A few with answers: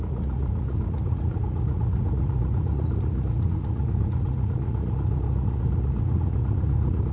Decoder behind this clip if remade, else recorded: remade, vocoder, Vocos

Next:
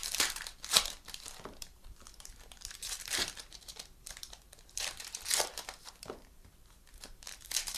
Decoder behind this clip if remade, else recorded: remade, vocoder, BigVGAN v2